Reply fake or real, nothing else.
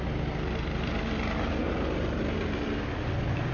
real